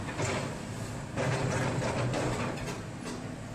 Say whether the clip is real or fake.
fake